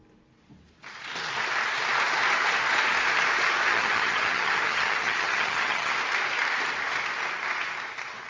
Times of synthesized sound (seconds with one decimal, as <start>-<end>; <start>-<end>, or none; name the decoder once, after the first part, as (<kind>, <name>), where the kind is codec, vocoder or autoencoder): 3.7-5.9 (vocoder, HiFi-GAN)